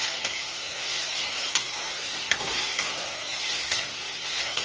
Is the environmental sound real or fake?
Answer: fake